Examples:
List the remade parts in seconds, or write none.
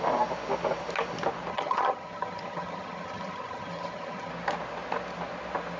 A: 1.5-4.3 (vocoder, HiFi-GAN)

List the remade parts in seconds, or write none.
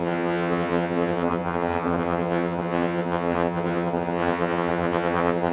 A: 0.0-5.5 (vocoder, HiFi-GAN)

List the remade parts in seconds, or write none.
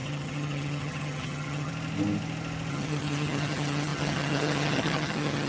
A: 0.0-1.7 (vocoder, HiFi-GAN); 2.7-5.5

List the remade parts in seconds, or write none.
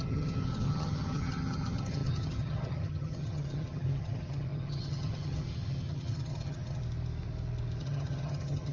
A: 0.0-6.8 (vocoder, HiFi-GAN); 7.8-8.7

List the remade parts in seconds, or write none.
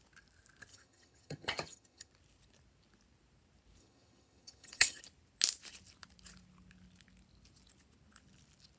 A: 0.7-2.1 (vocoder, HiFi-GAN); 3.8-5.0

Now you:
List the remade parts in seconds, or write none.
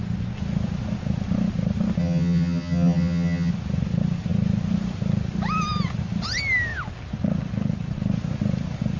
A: 2.0-3.5 (vocoder, HiFi-GAN)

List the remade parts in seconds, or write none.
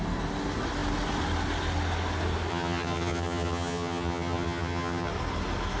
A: 2.5-5.1 (vocoder, HiFi-GAN)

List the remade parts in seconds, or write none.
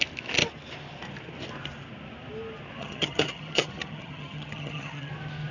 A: 2.8-5.1 (vocoder, HiFi-GAN)